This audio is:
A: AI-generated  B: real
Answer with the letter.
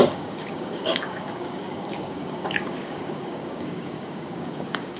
A